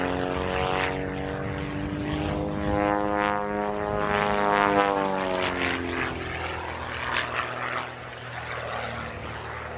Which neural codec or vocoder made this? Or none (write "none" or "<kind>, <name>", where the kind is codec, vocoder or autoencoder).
none